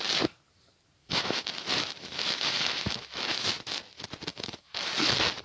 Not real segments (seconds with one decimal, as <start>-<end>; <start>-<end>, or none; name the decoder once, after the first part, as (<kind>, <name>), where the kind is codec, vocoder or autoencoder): 1.0-3.5 (autoencoder, DAC-VAE); 4.3-4.9